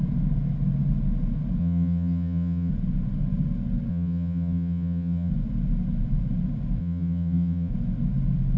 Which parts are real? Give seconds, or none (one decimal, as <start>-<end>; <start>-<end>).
0.0-1.6; 2.7-3.9; 5.3-6.8; 7.7-8.6